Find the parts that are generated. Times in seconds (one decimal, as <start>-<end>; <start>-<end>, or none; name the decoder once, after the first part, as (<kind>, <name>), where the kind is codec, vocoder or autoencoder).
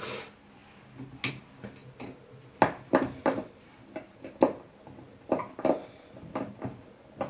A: none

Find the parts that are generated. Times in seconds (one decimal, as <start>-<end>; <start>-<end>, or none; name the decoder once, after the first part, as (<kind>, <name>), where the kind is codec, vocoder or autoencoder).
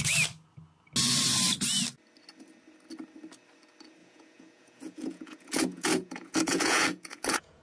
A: 4.0-7.6 (vocoder, Vocos)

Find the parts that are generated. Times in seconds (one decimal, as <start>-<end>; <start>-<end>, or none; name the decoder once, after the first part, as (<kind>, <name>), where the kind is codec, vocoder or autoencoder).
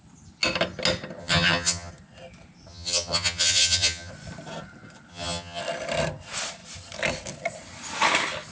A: 1.2-1.9 (vocoder, HiFi-GAN); 2.7-4.1; 5.1-5.6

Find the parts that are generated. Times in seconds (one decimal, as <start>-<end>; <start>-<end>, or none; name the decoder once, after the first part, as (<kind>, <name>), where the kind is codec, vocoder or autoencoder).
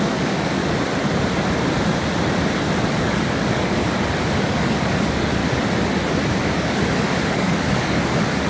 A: 0.0-0.6 (codec, DAC); 2.9-3.8; 4.3-5.4; 6.4-8.5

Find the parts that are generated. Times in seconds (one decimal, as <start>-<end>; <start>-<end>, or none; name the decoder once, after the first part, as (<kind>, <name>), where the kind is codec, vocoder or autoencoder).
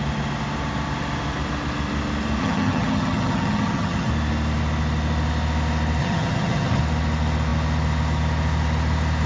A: 2.4-4.1 (vocoder, HiFi-GAN); 6.0-6.8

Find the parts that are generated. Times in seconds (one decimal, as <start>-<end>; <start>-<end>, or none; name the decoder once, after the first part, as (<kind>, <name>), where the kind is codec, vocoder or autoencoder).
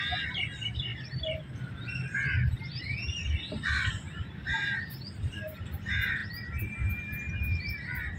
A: 0.9-2.5 (vocoder, BigVGAN v2); 3.2-5.6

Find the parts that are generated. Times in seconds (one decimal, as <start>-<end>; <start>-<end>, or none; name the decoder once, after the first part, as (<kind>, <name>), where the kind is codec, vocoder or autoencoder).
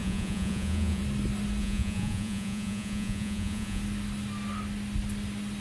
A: 0.0-1.0 (vocoder, Vocos); 1.6-3.8